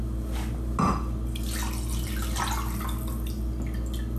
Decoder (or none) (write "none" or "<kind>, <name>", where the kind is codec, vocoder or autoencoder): none